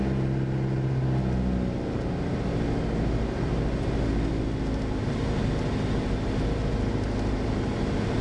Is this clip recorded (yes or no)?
yes